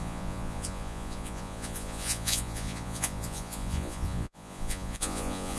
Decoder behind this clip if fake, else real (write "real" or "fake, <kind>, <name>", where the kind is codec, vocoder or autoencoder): fake, vocoder, Vocos